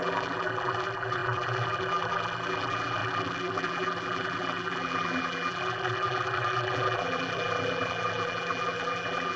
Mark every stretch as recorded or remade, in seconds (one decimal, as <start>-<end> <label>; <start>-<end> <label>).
0.0-9.4 remade

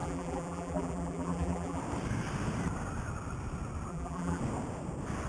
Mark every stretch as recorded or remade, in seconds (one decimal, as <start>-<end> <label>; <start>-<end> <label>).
0.0-1.8 remade; 1.8-3.9 recorded; 3.9-4.4 remade; 4.4-5.3 recorded

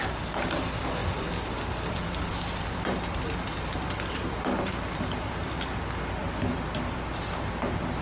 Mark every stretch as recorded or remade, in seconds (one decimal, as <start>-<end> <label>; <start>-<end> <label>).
0.0-1.0 recorded; 1.0-5.8 remade; 5.8-8.0 recorded

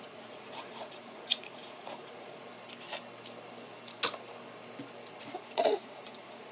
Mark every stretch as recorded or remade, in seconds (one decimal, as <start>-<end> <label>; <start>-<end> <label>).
0.0-2.5 remade; 2.5-5.2 recorded; 5.2-6.5 remade

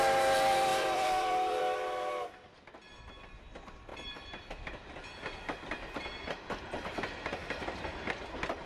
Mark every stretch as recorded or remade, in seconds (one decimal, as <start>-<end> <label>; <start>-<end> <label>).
0.0-0.7 recorded; 0.7-1.6 remade; 1.6-3.9 recorded; 3.9-6.4 remade; 6.4-8.7 recorded

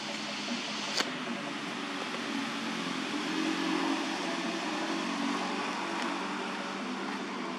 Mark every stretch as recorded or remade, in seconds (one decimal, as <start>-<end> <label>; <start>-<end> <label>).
0.0-7.6 recorded

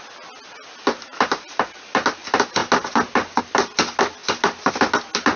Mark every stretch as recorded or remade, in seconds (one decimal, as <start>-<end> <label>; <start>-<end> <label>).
0.0-5.4 recorded

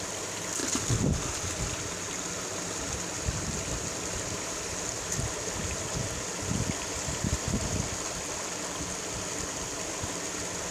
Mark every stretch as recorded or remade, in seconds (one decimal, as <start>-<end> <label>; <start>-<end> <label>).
0.0-10.7 recorded